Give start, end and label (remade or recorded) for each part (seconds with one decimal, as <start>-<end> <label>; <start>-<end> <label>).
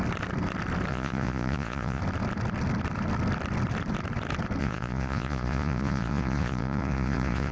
0.0-0.9 recorded; 0.9-2.0 remade; 2.0-4.6 recorded; 4.6-7.5 remade